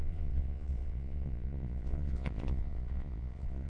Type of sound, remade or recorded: remade